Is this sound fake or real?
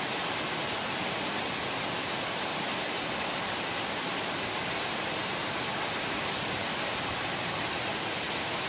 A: real